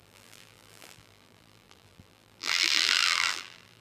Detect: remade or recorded remade